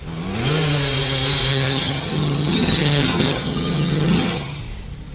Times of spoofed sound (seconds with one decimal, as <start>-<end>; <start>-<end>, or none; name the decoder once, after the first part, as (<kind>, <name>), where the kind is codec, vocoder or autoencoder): 1.5-4.6 (vocoder, HiFi-GAN)